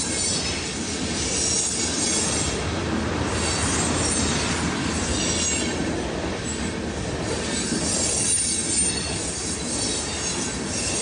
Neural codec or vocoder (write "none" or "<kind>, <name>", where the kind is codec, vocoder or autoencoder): none